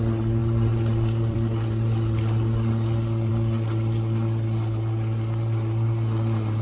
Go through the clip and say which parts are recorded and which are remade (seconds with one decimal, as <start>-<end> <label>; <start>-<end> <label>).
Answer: 0.0-0.4 recorded; 0.4-3.3 remade; 3.3-6.6 recorded